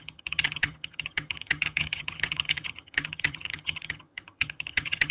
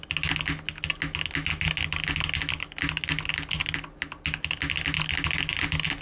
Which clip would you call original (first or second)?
second